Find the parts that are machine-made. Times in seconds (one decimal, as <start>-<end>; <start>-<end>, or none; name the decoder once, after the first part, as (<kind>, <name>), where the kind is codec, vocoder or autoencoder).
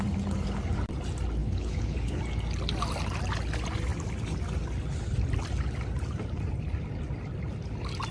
1.4-2.2 (codec, HILCodec)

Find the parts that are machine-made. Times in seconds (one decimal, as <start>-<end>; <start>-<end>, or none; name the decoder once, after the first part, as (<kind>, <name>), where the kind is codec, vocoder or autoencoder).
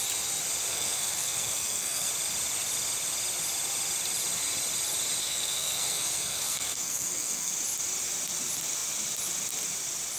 0.7-2.1 (codec, SNAC); 5.2-7.5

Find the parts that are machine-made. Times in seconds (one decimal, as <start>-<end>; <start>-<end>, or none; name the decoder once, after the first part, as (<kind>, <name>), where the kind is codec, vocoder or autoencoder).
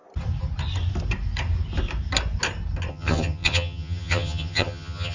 2.9-5.1 (vocoder, HiFi-GAN)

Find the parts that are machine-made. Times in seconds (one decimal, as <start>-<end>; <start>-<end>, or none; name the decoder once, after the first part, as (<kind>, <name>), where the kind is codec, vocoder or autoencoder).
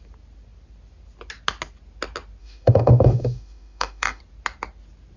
2.4-4.2 (autoencoder, DAC-VAE)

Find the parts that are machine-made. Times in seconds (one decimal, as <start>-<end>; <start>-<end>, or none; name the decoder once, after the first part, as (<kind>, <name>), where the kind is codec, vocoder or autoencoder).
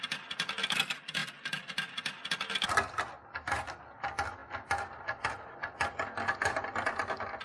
none